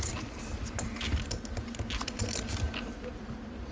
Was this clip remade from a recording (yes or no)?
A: no